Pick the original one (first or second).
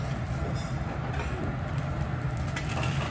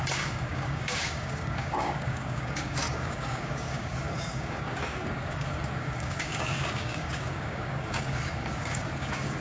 first